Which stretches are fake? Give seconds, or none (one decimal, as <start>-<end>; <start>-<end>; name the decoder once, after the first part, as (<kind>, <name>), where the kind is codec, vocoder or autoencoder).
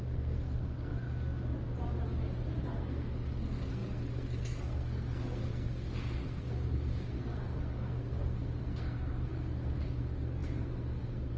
0.0-0.9 (codec, SNAC); 2.6-11.4